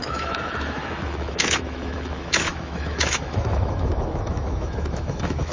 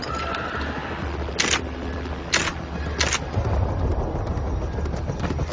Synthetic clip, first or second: first